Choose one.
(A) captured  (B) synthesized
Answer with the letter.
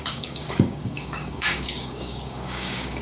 B